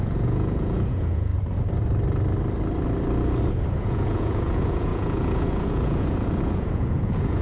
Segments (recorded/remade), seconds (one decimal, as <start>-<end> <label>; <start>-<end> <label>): 0.0-1.3 remade; 1.3-3.7 recorded; 3.7-7.4 remade

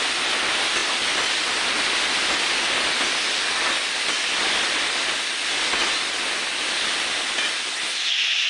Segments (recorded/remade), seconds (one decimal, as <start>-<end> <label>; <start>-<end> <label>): 0.0-8.5 recorded